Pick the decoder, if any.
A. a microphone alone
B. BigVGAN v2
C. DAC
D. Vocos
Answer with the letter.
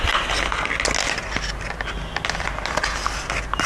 A